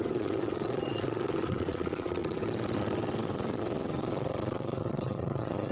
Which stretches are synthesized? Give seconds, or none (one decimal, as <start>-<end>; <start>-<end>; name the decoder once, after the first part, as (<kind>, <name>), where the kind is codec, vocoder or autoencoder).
0.0-5.7 (vocoder, Vocos)